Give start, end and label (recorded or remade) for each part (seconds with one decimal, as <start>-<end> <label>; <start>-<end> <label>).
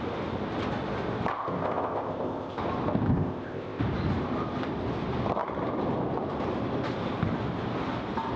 0.0-1.3 recorded; 1.3-2.6 remade; 2.6-3.1 recorded; 3.1-3.8 remade; 3.8-8.4 recorded